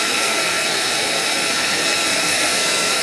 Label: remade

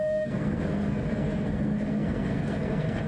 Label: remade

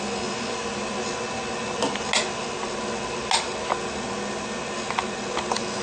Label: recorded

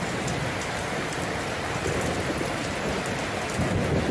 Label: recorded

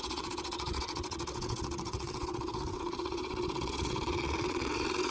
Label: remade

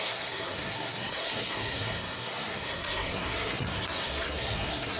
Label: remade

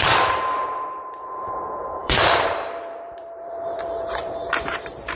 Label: remade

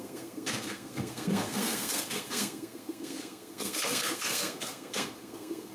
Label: remade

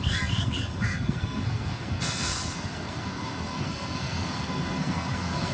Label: remade